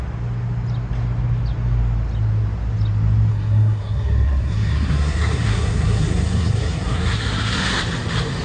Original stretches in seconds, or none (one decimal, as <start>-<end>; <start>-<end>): 0.0-3.3; 7.8-8.4